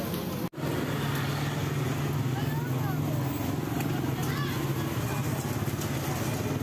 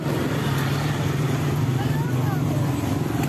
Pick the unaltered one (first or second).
first